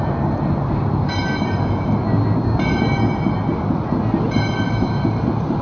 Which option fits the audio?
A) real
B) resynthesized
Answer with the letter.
A